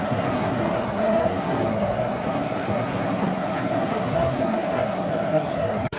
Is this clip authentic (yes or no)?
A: no